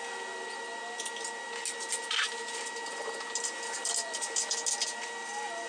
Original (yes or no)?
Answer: yes